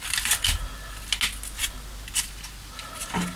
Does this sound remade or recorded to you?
recorded